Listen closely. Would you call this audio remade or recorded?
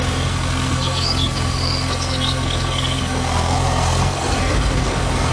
remade